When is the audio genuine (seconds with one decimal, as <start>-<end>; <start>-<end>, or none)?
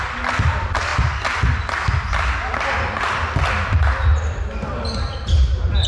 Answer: 0.0-5.9